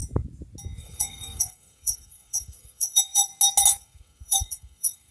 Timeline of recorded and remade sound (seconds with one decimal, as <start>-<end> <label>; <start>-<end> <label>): 0.0-0.8 recorded; 0.8-3.3 remade; 3.3-3.8 recorded; 3.8-5.1 remade